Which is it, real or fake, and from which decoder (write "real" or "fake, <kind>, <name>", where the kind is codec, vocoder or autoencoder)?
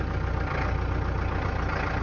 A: real